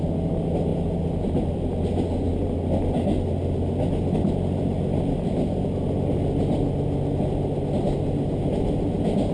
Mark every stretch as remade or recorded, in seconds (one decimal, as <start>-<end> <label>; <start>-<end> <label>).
0.0-9.3 recorded